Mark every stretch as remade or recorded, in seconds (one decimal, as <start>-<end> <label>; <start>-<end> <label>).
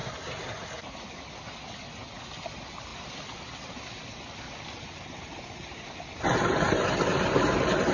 0.0-7.9 recorded